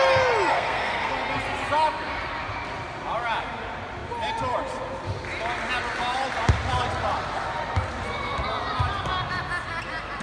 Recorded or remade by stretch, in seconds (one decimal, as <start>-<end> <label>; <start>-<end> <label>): 0.0-0.5 recorded; 0.5-1.1 remade; 1.1-10.2 recorded